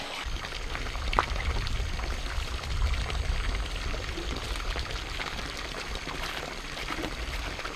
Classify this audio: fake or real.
real